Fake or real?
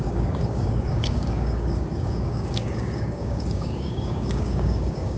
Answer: fake